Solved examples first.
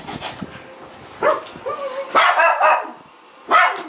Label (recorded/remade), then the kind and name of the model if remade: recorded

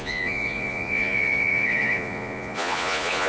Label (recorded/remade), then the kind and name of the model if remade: remade, vocoder, Vocos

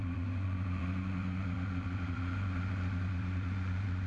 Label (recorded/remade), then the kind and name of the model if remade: remade, vocoder, Vocos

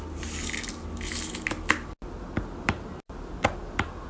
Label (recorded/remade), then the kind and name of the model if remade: recorded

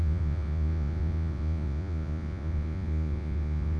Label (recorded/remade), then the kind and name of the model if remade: remade, vocoder, Vocos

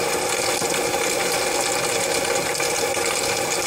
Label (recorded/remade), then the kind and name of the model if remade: recorded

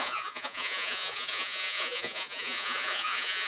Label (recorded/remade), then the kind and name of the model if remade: remade, vocoder, Vocos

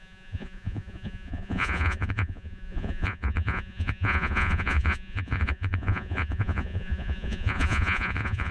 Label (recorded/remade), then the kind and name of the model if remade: remade, vocoder, Vocos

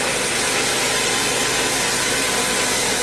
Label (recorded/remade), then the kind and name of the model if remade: recorded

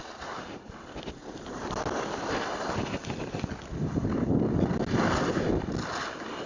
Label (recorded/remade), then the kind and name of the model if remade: recorded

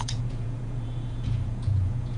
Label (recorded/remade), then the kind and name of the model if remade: remade, vocoder, Vocos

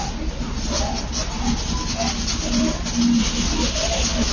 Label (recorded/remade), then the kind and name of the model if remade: recorded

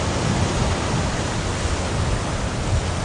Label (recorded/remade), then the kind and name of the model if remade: recorded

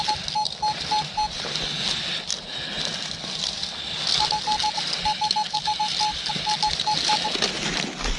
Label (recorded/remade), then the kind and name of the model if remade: recorded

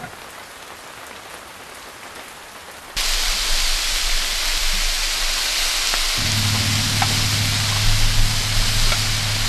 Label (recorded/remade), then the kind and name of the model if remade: recorded